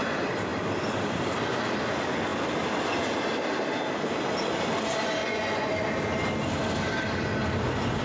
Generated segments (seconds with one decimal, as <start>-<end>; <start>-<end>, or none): 5.2-5.7

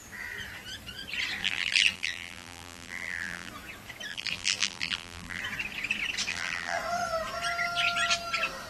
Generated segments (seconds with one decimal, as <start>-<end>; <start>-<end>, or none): 1.4-3.5; 4.1-5.4; 6.3-6.8

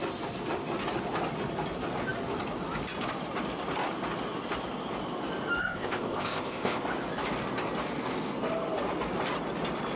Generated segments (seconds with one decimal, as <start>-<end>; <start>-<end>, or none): 5.6-6.8

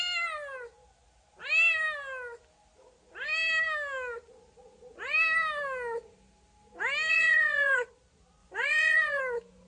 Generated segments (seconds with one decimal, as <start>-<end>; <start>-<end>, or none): 7.1-7.9; 8.4-9.2

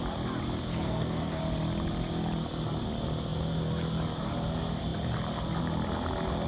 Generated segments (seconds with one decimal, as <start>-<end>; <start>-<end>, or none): 0.7-1.4

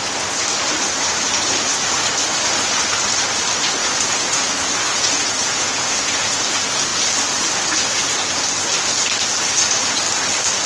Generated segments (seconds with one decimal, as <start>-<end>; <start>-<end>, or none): 3.8-6.4

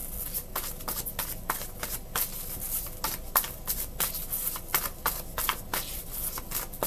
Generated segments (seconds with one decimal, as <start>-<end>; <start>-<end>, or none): none